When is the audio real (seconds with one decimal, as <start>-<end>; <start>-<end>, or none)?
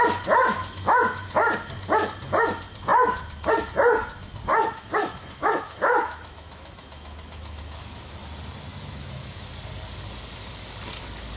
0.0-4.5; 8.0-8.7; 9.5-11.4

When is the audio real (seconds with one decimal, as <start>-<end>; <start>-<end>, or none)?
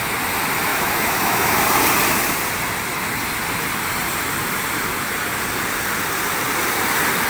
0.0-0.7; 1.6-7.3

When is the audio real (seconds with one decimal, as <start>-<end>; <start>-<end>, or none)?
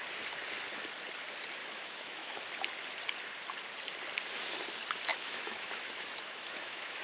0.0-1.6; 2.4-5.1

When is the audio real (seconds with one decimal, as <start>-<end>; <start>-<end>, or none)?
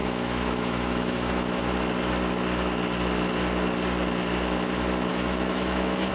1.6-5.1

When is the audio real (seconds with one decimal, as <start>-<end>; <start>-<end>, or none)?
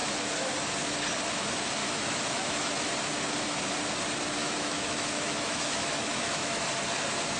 0.0-1.8; 2.7-4.4; 6.7-7.4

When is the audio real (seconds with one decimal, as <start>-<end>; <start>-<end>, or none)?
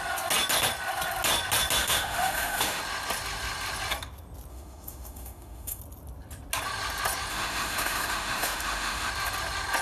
0.0-1.8; 2.8-4.5; 5.8-7.3; 9.1-9.8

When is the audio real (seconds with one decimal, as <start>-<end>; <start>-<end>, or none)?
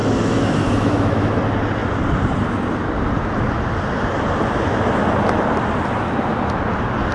1.4-7.1